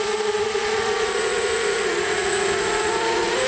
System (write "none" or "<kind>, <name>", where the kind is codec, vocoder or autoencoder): vocoder, Vocos